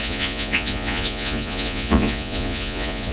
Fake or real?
fake